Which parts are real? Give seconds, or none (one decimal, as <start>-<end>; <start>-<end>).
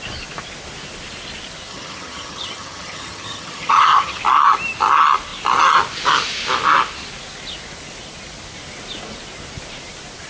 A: 0.0-1.7; 4.2-10.3